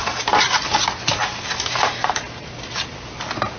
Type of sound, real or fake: real